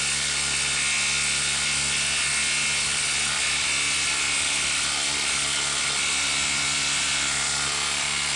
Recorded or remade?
recorded